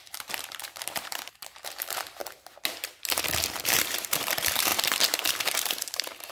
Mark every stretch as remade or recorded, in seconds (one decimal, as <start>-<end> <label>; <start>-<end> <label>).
0.0-2.2 remade; 2.2-3.5 recorded; 3.5-6.3 remade